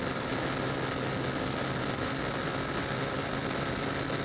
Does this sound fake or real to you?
real